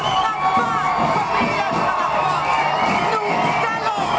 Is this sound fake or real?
real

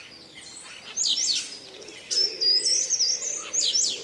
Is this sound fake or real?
real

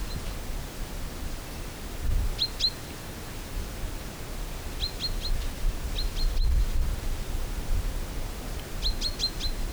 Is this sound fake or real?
real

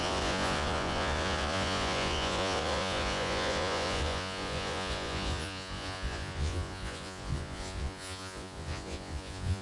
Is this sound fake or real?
fake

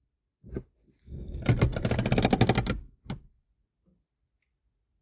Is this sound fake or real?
real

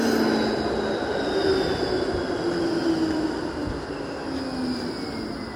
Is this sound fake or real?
real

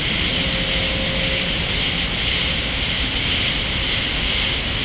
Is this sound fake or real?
real